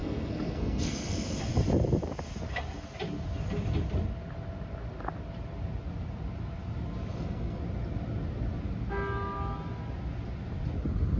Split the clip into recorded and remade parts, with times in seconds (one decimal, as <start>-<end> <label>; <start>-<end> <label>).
0.0-1.4 remade; 1.4-7.1 recorded; 7.1-7.6 remade; 7.6-11.2 recorded